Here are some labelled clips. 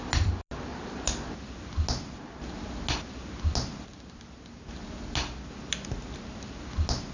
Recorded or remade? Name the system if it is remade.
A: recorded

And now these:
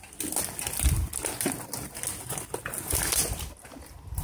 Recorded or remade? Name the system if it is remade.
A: recorded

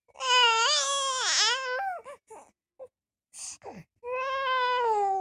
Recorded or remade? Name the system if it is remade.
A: recorded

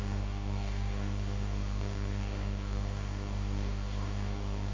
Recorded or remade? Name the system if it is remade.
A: remade, codec, DAC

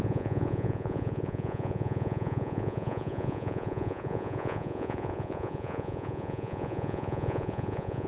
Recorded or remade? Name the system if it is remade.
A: remade, vocoder, Vocos